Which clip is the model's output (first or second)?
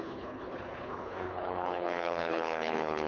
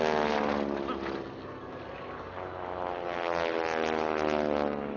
first